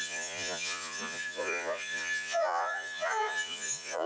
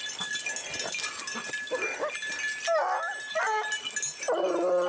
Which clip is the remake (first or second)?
first